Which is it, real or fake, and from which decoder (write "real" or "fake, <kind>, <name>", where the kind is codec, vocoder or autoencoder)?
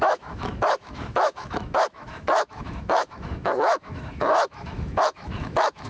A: fake, autoencoder, DAC-VAE